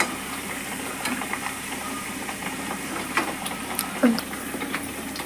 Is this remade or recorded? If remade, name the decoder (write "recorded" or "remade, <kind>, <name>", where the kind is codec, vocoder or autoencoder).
remade, vocoder, BigVGAN v2